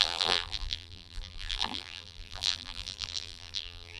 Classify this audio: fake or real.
fake